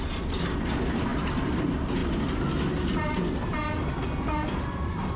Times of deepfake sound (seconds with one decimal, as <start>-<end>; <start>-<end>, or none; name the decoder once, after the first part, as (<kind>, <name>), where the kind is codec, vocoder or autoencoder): 0.0-2.0 (vocoder, BigVGAN v2)